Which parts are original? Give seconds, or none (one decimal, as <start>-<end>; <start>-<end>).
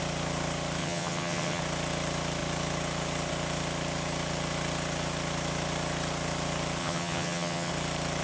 0.0-0.8; 1.6-6.8; 7.7-8.2